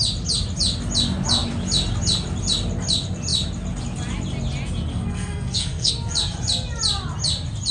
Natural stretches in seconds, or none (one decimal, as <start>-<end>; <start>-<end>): 0.0-4.9; 5.9-7.7